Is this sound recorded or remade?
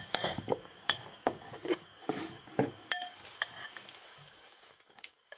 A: remade